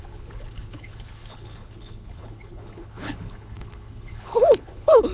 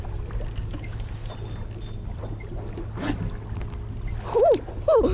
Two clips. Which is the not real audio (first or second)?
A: first